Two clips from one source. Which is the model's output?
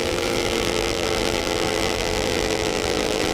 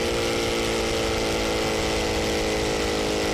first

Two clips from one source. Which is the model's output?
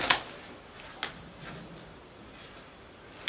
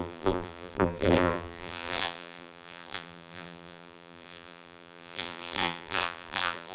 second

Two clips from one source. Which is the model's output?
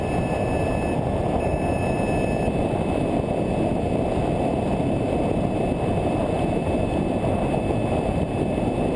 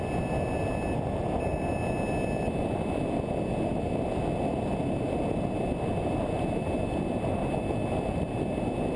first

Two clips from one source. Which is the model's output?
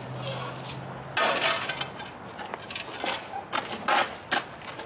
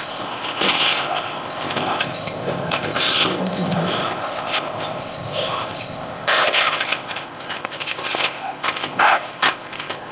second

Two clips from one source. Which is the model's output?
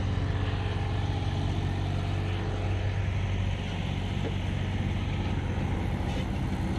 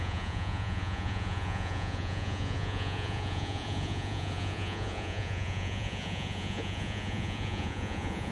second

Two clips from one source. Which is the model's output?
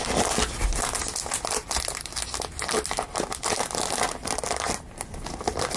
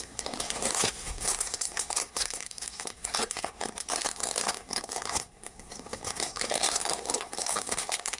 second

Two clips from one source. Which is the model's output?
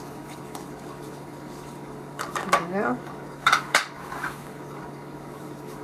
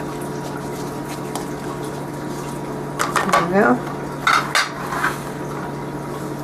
first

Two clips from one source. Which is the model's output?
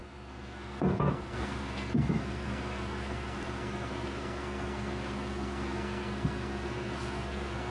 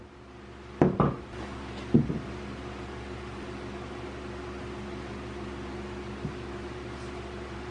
first